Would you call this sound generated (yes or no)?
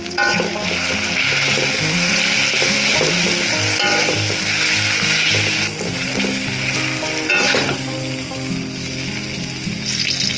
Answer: no